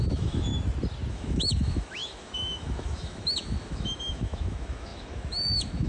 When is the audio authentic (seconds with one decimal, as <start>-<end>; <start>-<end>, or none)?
0.5-1.1